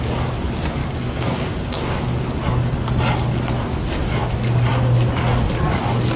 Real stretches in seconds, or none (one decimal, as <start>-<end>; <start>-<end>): 0.0-0.8; 2.0-6.2